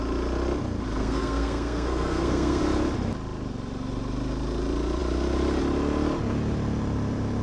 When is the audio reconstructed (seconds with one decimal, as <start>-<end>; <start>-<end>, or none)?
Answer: 1.0-2.6